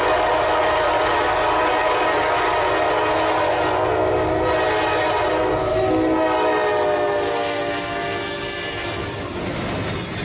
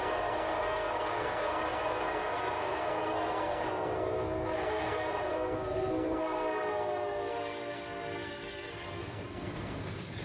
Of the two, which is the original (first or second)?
first